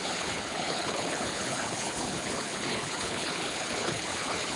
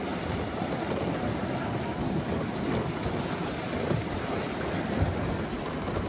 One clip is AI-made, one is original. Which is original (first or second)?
second